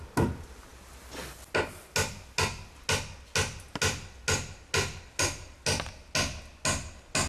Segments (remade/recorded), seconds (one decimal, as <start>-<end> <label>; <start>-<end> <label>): 0.0-7.3 recorded